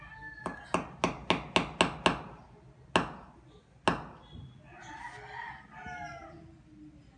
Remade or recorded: recorded